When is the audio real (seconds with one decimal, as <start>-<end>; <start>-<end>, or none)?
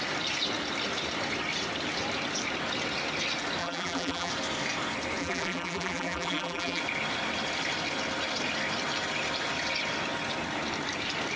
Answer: 0.0-3.6; 4.3-5.2; 6.8-11.4